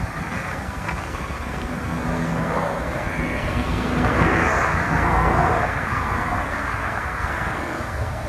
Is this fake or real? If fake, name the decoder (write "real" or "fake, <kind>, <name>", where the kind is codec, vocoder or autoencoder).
fake, codec, SNAC